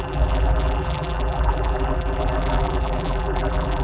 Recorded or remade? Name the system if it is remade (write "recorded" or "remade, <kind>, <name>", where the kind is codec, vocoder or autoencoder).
remade, vocoder, BigVGAN v2